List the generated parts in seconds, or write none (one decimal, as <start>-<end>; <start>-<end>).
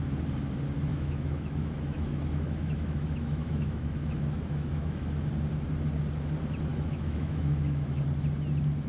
0.9-5.3; 6.7-8.0